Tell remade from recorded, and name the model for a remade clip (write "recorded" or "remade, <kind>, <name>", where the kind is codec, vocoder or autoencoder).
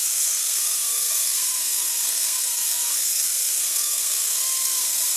remade, codec, SNAC